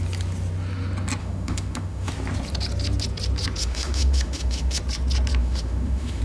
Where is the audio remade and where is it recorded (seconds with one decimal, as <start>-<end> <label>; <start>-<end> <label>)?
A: 0.0-1.2 recorded; 1.2-2.1 remade; 2.1-3.6 recorded; 3.6-4.8 remade; 4.8-5.4 recorded; 5.4-6.2 remade